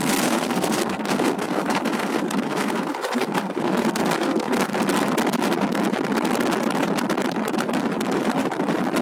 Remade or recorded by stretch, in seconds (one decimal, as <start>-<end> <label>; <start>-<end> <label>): 0.0-4.7 remade; 4.7-9.0 recorded